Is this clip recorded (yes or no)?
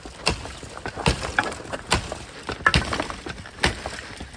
yes